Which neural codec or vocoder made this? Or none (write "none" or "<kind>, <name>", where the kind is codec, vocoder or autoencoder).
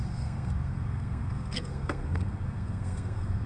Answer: codec, SNAC